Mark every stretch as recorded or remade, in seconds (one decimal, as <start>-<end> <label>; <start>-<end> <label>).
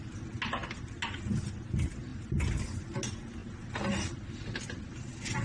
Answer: 0.0-5.4 recorded